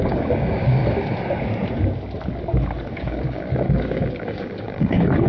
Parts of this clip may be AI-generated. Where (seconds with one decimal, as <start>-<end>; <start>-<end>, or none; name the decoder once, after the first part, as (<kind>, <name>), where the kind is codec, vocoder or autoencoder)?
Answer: 0.0-0.8 (codec, DAC); 2.9-5.3